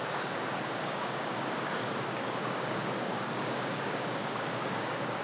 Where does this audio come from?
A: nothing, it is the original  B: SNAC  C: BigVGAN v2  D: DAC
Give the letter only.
D